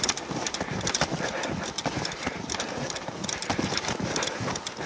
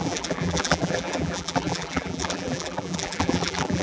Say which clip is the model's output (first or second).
second